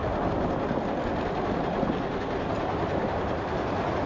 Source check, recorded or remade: recorded